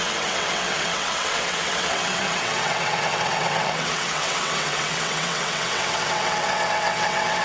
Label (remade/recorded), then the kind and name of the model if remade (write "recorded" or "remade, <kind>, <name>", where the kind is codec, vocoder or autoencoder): remade, vocoder, WaveNeXt